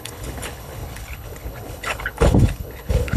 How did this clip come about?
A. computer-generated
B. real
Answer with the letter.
A